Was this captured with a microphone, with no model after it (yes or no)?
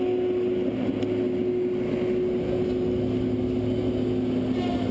yes